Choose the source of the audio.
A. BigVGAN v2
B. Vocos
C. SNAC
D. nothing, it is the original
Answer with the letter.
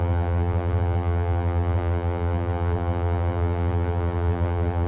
A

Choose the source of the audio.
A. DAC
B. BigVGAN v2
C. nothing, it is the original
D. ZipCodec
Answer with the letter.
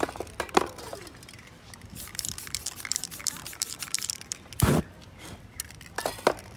B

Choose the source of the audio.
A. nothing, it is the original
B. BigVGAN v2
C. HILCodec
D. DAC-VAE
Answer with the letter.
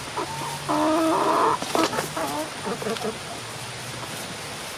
A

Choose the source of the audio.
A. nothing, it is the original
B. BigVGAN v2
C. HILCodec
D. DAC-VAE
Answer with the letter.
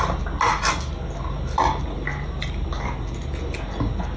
A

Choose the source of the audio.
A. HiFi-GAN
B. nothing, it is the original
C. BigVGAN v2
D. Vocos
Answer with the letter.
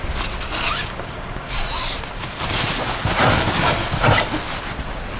B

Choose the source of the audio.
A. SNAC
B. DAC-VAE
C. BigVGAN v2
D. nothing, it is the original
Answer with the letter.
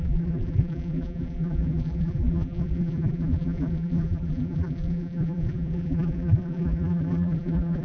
C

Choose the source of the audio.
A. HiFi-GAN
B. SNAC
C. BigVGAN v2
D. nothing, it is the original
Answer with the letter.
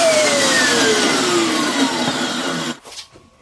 C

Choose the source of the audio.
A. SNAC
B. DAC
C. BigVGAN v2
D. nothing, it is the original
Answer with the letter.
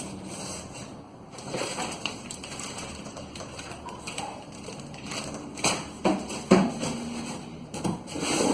C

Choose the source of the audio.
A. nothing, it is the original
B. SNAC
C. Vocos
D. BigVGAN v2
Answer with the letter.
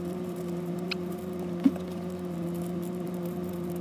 D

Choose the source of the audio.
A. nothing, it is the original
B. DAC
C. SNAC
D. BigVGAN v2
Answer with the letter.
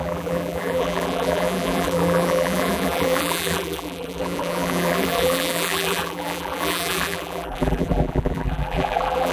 D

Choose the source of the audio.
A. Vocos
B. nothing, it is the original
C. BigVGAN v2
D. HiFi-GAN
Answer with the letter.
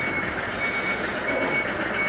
B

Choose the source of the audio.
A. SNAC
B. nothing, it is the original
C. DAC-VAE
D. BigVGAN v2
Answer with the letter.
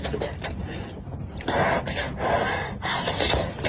B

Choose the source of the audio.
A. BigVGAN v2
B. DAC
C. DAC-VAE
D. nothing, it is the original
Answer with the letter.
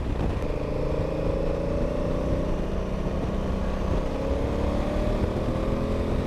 D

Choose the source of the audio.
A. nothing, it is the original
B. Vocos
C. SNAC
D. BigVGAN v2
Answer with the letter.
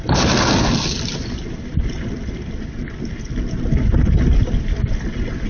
A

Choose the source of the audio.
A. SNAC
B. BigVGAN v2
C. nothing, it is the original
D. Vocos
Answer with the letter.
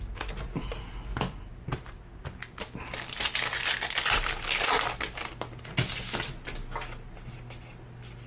C